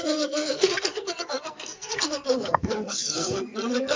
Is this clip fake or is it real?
fake